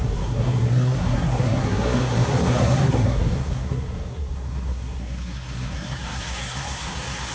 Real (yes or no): no